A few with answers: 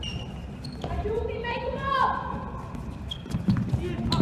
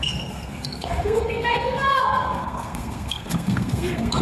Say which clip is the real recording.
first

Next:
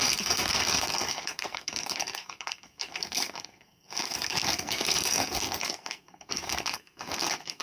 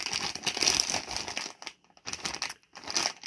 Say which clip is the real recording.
second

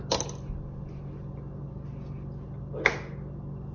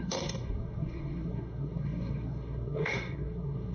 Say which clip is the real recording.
first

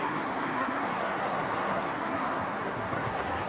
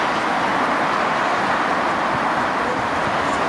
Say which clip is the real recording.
second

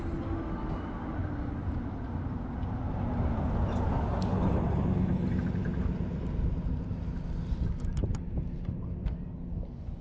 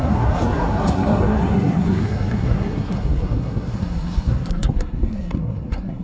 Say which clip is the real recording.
first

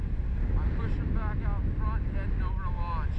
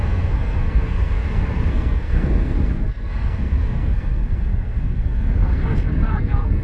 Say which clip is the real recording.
first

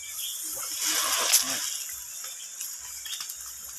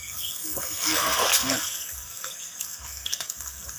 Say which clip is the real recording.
first